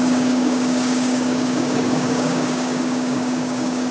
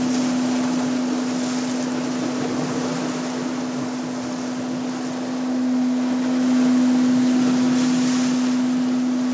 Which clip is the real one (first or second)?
second